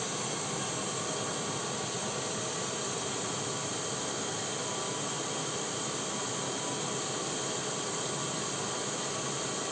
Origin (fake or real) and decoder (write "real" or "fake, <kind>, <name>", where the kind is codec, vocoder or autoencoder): real